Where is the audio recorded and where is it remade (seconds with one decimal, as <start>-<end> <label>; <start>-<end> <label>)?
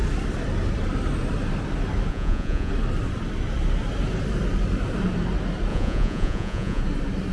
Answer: 0.0-2.1 recorded; 2.1-2.7 remade; 2.7-5.7 recorded; 5.7-6.8 remade; 6.8-7.3 recorded